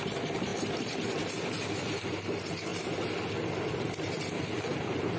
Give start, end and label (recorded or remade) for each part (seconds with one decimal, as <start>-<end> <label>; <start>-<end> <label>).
0.0-2.7 remade; 2.7-3.7 recorded; 3.7-5.2 remade